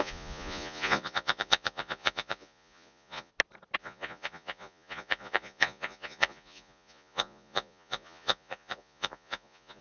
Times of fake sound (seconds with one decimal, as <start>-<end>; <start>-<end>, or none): 0.0-3.3; 3.8-9.8